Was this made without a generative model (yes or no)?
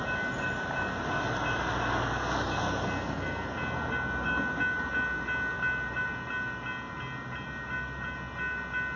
yes